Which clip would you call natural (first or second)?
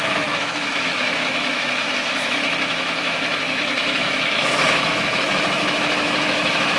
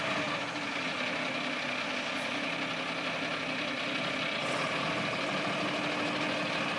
second